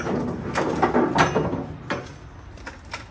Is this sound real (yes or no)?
yes